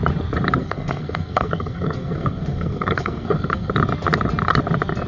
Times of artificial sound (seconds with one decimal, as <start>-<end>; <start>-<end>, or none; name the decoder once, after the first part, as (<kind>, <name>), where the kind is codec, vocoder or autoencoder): 0.6-3.7 (codec, SNAC)